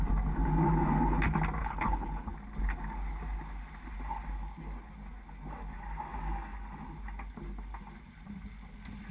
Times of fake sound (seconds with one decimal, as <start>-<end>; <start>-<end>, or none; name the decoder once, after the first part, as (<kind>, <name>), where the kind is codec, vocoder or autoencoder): 1.6-2.3 (codec, HILCodec)